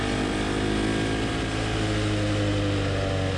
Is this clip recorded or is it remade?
recorded